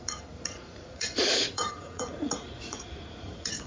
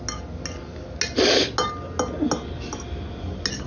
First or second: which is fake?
first